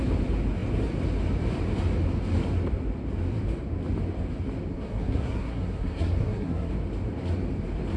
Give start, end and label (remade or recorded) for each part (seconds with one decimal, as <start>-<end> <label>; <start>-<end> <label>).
0.0-4.7 recorded; 4.7-6.7 remade; 6.7-8.0 recorded